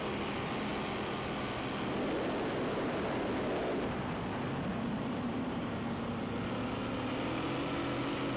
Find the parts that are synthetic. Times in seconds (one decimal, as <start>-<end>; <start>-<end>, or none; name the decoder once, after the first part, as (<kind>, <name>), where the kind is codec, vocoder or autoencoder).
4.7-5.6 (vocoder, BigVGAN v2)